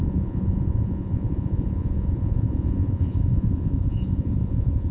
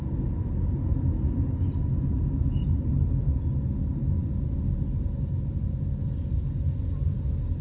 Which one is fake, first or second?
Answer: first